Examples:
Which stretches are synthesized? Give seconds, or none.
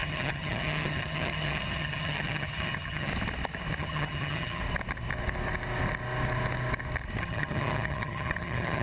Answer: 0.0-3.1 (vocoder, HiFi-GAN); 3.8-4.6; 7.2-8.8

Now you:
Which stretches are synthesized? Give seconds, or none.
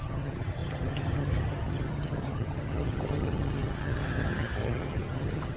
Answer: 0.0-5.6 (vocoder, HiFi-GAN)